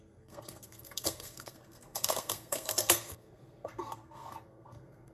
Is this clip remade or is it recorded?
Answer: remade